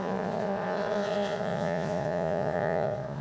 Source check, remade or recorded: remade